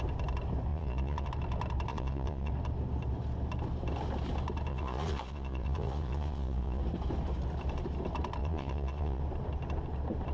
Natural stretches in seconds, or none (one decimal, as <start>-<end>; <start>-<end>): 0.0-0.7; 1.3-1.9; 2.5-4.7; 6.8-8.4; 9.2-10.3

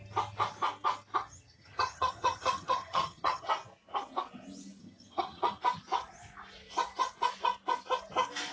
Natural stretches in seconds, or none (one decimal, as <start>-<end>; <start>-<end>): 0.0-1.2; 3.5-4.8; 5.6-8.5